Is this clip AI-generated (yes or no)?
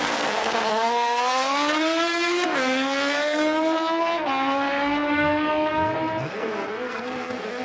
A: yes